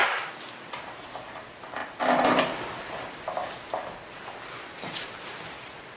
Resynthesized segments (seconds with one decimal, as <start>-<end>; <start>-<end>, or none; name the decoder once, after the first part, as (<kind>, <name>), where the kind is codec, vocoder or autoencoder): 0.0-0.7 (codec, DAC)